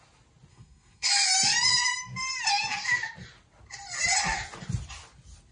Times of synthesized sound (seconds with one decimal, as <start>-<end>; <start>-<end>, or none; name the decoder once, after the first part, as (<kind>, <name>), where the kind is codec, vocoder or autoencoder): 0.5-1.1 (codec, SNAC)